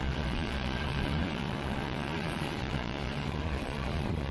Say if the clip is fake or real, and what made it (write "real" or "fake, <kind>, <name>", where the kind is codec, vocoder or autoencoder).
fake, vocoder, Vocos